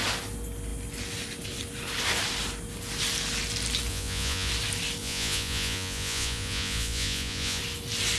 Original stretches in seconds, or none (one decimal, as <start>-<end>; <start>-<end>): 0.0-3.9; 4.5-5.0; 7.6-8.2